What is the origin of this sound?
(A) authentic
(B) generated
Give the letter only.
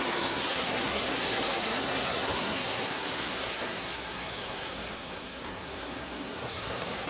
B